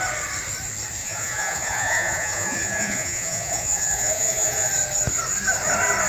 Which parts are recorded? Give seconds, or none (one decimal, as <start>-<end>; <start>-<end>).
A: 0.0-1.0; 4.7-6.1

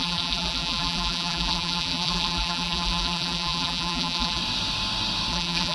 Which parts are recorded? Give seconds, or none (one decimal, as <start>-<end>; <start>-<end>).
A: 4.4-5.3